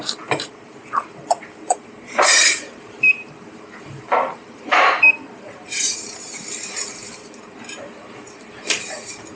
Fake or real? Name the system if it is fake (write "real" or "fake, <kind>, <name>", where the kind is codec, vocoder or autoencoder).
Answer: fake, vocoder, BigVGAN v2